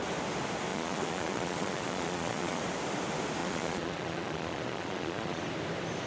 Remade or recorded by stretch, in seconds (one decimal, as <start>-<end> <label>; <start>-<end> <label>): 0.0-0.7 recorded; 0.7-2.6 remade; 2.6-3.4 recorded; 3.4-5.4 remade; 5.4-6.1 recorded